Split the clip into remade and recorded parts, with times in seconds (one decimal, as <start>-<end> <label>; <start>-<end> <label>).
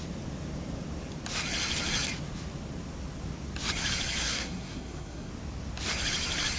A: 0.0-4.2 recorded; 4.2-5.3 remade; 5.3-6.6 recorded